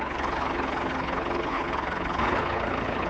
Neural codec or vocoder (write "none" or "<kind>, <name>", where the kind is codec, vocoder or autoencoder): codec, HILCodec